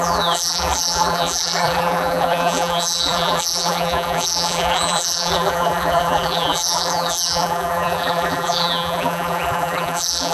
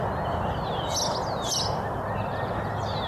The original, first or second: second